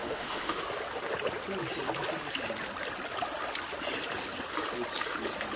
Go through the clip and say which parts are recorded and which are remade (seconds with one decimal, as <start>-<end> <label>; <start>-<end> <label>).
0.0-0.6 remade; 0.6-5.6 recorded